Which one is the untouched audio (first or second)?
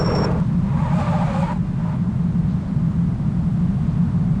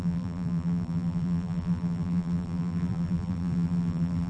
first